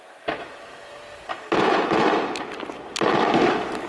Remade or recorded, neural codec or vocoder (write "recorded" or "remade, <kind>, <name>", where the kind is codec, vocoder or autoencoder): recorded